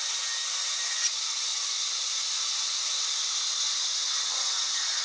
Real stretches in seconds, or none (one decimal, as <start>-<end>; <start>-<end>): 0.0-5.0